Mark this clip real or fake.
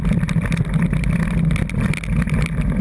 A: real